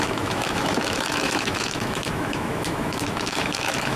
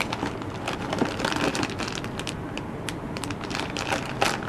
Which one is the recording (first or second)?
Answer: second